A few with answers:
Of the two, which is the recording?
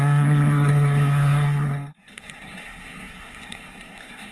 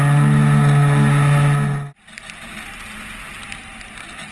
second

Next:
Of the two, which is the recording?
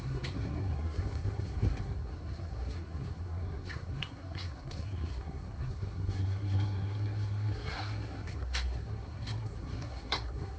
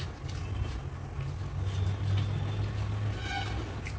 second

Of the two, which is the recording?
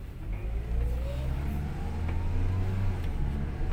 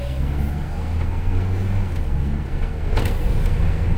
first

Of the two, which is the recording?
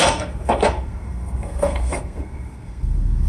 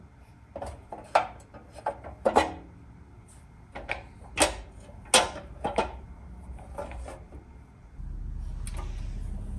second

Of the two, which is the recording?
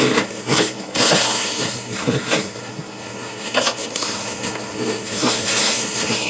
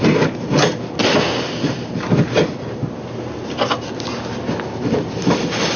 second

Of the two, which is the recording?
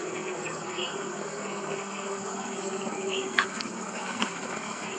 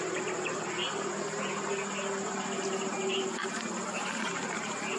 second